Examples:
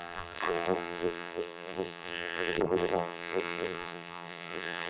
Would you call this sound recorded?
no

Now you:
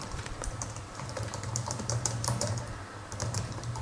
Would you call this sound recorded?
no